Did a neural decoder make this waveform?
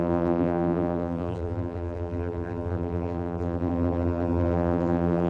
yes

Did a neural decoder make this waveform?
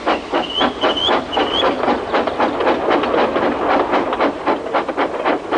no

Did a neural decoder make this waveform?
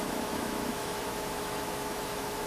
yes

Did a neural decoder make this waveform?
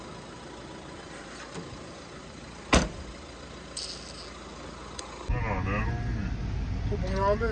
no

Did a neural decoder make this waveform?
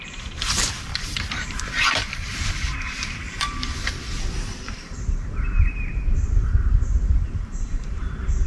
yes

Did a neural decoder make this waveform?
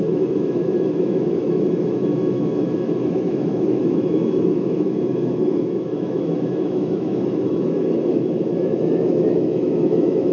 yes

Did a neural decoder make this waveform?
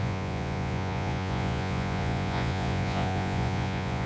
yes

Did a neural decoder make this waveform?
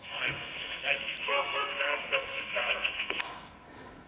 yes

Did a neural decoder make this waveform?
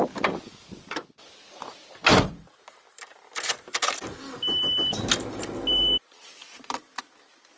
no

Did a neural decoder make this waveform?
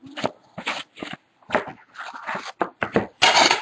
no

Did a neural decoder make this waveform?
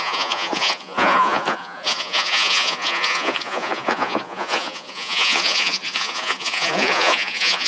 yes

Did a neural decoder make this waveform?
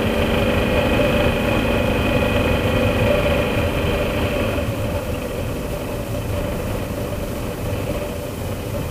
no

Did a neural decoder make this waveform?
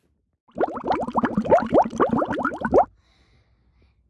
no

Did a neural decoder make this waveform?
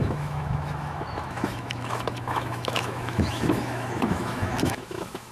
yes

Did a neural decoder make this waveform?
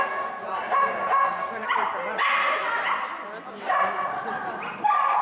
no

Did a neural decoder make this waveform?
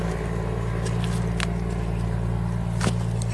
no